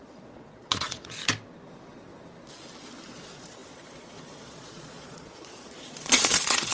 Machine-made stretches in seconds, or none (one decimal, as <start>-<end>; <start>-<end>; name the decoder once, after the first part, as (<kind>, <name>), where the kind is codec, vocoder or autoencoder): 0.0-1.2 (vocoder, Vocos); 3.1-6.7